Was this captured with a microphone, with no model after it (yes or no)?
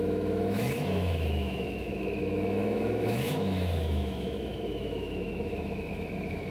no